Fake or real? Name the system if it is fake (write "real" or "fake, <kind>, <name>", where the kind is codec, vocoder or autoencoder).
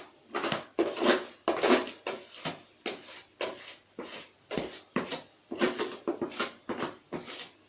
real